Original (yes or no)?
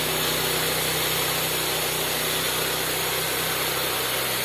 yes